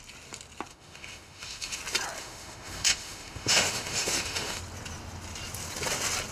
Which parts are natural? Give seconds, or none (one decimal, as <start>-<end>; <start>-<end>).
0.0-0.7; 1.8-2.2; 4.6-6.3